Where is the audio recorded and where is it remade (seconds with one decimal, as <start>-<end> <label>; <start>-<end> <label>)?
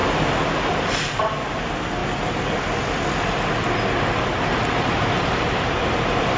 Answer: 0.0-0.7 recorded; 0.7-2.0 remade; 2.0-4.0 recorded; 4.0-6.4 remade